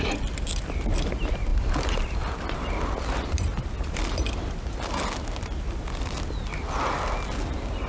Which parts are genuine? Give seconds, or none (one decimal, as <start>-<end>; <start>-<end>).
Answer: 0.0-7.9